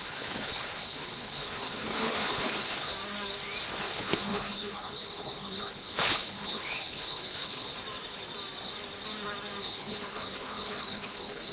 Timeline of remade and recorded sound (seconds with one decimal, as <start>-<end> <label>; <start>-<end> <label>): 0.0-2.9 remade; 2.9-3.8 recorded; 3.8-7.7 remade; 7.7-9.6 recorded; 9.6-11.5 remade